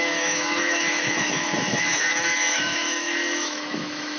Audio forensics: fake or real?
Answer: fake